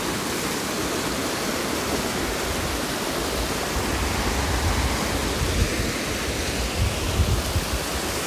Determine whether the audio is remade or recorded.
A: recorded